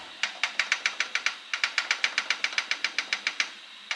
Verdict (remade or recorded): recorded